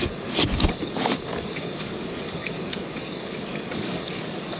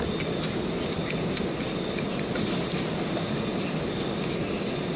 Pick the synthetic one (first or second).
first